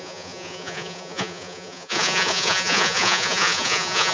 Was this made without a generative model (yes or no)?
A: no